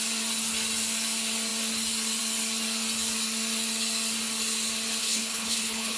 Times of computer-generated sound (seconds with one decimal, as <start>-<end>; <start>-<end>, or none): 5.0-6.0